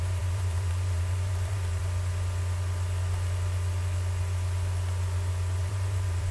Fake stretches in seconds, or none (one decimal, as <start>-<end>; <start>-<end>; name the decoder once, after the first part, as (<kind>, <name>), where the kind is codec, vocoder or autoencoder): 0.0-1.8 (vocoder, BigVGAN v2); 5.6-6.3